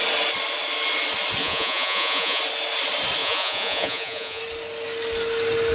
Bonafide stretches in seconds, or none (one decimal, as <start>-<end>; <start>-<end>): 0.0-1.4; 2.4-3.2; 4.4-5.7